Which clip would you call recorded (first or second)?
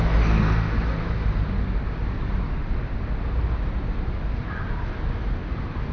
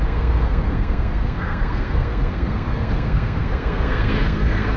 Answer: first